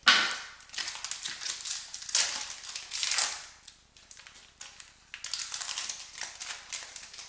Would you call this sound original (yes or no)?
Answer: yes